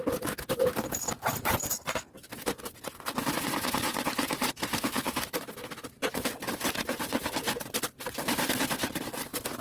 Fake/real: real